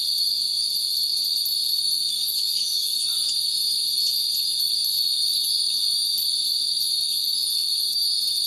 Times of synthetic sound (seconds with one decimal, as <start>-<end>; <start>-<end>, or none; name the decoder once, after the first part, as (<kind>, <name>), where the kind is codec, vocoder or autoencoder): 2.1-3.1 (codec, DAC)